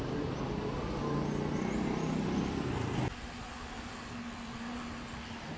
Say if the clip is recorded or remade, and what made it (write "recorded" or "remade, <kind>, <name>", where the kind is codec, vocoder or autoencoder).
recorded